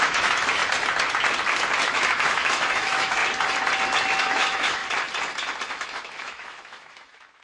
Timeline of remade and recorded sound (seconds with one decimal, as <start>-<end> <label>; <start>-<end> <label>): 0.0-0.6 remade; 0.6-1.9 recorded; 1.9-3.2 remade; 3.2-4.2 recorded; 4.2-4.8 remade; 4.8-5.7 recorded; 5.7-7.4 remade